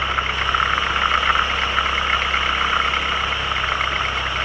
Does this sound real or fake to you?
real